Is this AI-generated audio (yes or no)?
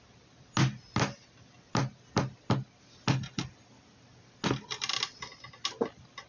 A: no